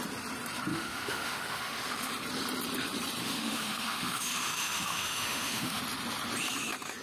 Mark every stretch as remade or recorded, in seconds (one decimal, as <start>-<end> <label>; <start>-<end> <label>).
0.0-0.7 recorded; 0.7-2.1 remade; 2.1-3.2 recorded; 3.2-5.8 remade; 5.8-7.0 recorded